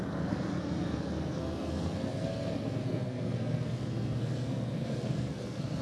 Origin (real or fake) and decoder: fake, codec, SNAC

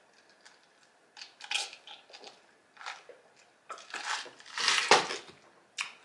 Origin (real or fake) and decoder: real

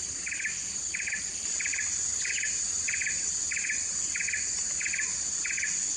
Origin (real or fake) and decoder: real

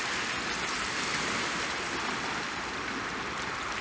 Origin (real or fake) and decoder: real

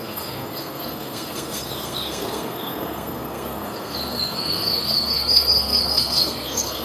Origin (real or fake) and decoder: fake, codec, SNAC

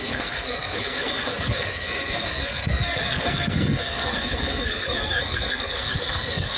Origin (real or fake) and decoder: fake, codec, SNAC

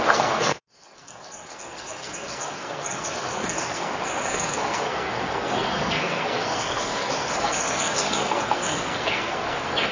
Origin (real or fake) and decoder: fake, codec, SNAC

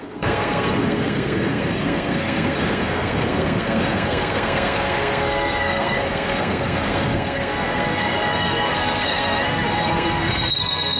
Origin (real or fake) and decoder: fake, codec, SNAC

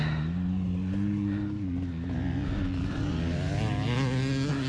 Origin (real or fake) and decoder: real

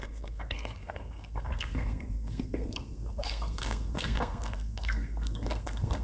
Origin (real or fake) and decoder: fake, codec, SNAC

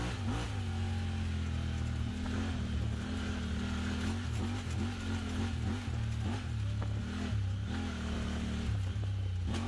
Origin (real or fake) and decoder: real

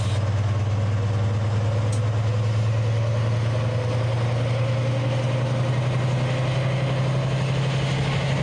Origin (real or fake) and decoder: real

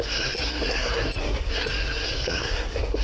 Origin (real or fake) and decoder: fake, codec, SNAC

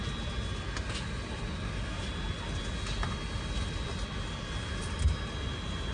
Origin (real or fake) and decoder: real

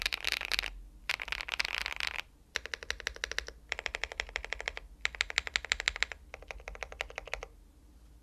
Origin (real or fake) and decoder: real